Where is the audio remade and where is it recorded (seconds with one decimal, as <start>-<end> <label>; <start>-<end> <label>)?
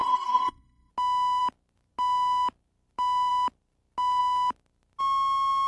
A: 0.0-0.9 remade; 0.9-5.7 recorded